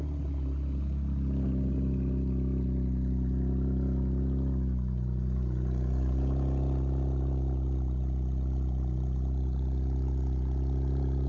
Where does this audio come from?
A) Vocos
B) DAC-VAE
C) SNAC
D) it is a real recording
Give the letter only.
D